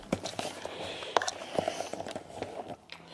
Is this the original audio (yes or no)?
yes